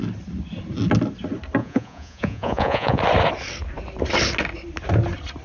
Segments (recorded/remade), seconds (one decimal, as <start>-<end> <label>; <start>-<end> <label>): 0.0-1.6 recorded; 1.6-3.0 remade; 3.0-5.4 recorded